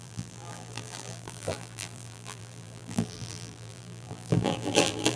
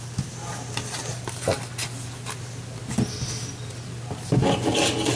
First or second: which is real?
second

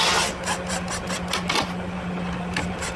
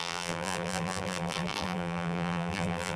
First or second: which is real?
first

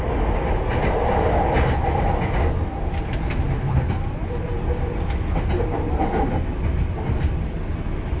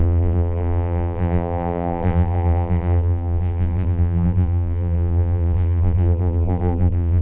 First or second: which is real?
first